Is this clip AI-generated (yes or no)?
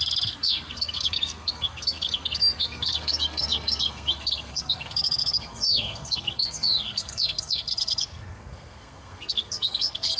yes